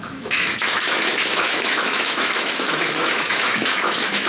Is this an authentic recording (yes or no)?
no